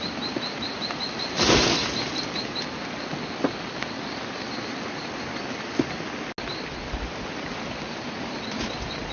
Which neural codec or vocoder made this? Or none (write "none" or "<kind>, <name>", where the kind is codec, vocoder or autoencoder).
none